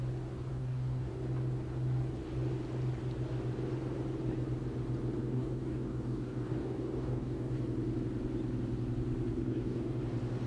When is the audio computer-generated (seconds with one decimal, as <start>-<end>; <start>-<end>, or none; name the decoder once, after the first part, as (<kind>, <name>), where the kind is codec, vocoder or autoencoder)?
0.5-1.1 (codec, DAC); 5.2-7.6; 9.3-10.0